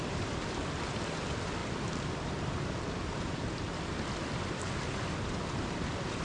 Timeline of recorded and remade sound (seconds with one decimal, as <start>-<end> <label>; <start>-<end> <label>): 0.0-6.2 remade